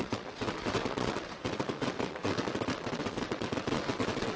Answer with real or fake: fake